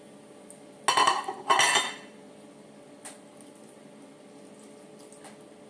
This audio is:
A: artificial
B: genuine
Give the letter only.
B